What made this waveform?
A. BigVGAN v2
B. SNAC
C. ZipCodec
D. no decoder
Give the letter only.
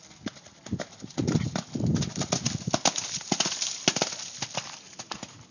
D